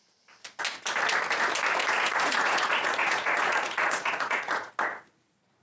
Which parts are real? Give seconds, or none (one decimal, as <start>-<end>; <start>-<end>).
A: 0.0-1.8; 4.7-5.6